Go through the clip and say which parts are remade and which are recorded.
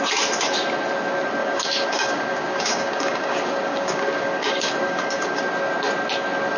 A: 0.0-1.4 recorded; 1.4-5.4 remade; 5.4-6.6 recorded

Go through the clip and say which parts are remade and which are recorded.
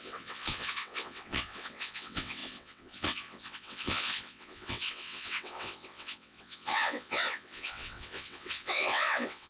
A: 0.0-9.5 remade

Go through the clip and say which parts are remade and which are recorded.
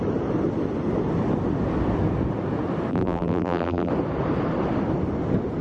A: 0.0-2.9 recorded; 2.9-3.9 remade; 3.9-5.6 recorded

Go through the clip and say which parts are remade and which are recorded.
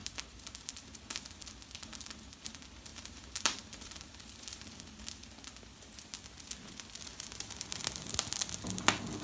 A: 0.0-1.0 remade; 1.0-1.9 recorded; 1.9-2.5 remade; 2.5-2.9 recorded; 2.9-5.0 remade; 5.0-7.1 recorded; 7.1-7.8 remade; 7.8-9.2 recorded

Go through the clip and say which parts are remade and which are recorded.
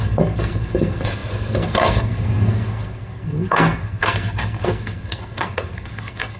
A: 0.0-6.4 remade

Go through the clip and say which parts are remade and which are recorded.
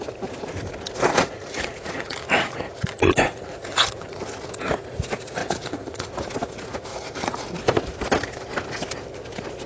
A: 0.0-1.1 recorded; 1.1-4.2 remade; 4.2-5.4 recorded; 5.4-6.1 remade; 6.1-6.9 recorded; 6.9-7.4 remade; 7.4-9.7 recorded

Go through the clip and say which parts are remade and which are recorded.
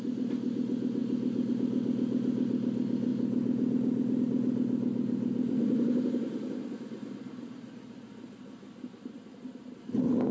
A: 0.0-10.3 recorded